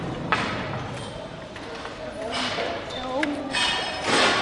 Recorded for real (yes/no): yes